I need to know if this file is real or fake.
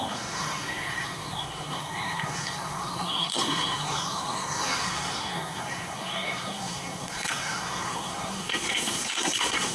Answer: fake